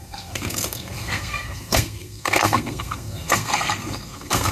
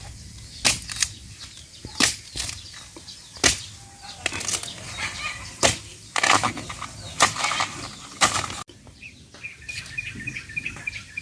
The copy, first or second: first